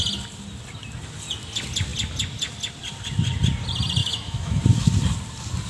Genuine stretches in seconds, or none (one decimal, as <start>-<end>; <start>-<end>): 0.0-4.0; 4.6-5.7